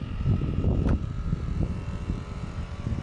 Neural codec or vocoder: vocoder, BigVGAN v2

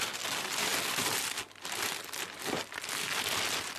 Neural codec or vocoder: none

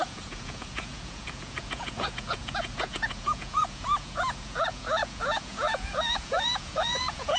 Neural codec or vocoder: vocoder, Vocos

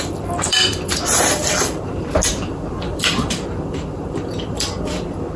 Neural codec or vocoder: vocoder, BigVGAN v2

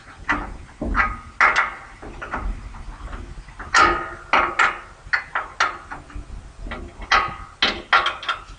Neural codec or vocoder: none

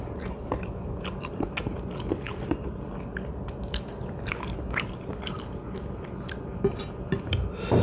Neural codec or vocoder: none